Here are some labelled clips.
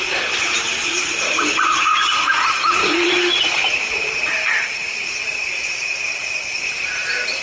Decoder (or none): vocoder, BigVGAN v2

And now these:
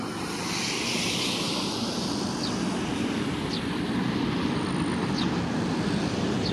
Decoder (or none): none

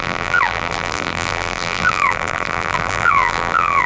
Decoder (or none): vocoder, BigVGAN v2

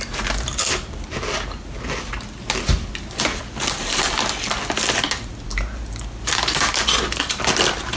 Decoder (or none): none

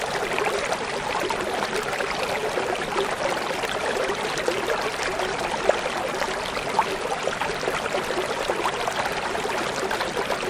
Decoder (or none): none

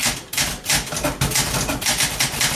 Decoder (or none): none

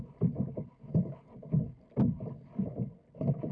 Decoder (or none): none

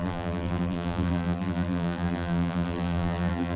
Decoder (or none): vocoder, BigVGAN v2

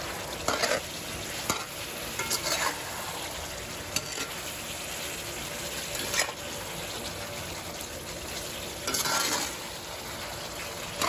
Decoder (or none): none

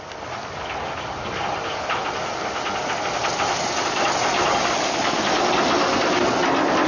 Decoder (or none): none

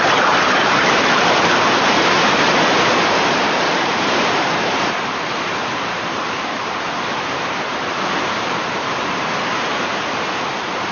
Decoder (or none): vocoder, BigVGAN v2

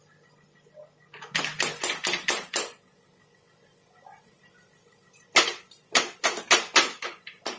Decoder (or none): vocoder, BigVGAN v2